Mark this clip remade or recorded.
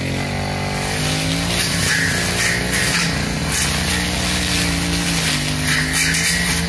recorded